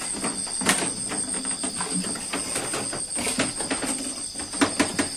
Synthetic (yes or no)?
no